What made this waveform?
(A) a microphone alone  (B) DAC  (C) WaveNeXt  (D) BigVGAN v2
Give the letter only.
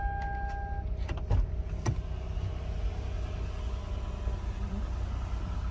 A